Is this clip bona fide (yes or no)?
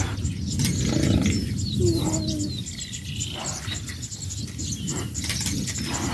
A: yes